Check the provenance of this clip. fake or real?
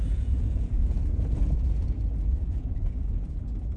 fake